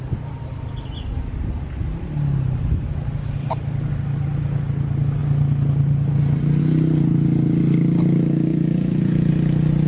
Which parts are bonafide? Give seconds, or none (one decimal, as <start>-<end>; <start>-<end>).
0.0-8.5; 9.3-9.9